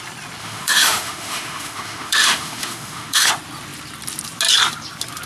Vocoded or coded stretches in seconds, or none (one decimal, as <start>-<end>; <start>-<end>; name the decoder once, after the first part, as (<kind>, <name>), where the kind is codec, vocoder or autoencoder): 0.4-3.3 (autoencoder, DAC-VAE)